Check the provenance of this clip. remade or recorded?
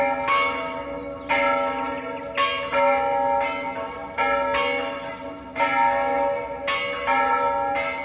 recorded